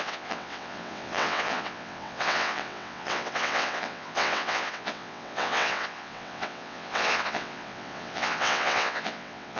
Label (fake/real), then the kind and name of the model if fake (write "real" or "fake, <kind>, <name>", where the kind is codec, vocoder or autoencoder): fake, vocoder, WaveNeXt